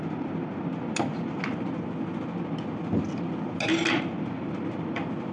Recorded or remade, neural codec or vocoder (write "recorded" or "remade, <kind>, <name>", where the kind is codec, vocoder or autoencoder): recorded